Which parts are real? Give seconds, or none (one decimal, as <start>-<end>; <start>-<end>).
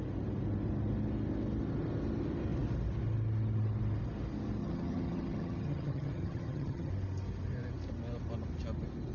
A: 0.0-4.6; 6.9-9.1